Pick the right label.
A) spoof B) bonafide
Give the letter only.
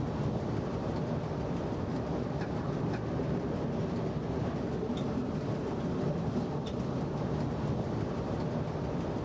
B